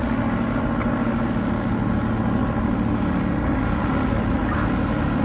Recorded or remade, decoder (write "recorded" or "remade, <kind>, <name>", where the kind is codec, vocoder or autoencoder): recorded